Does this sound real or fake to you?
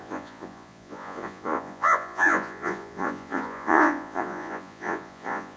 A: fake